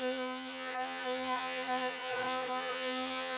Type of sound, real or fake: fake